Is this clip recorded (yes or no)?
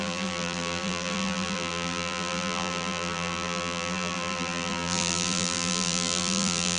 no